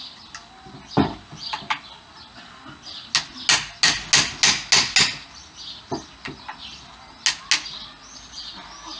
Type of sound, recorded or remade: recorded